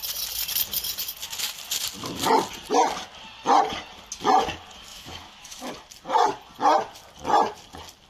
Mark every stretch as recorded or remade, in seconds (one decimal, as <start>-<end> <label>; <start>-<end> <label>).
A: 0.0-4.9 recorded; 4.9-5.7 remade; 5.7-8.1 recorded